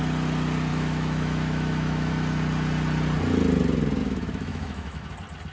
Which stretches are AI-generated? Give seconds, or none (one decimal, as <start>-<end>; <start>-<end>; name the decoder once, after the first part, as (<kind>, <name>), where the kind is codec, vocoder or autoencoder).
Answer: 0.7-2.1 (autoencoder, DAC-VAE); 4.0-5.1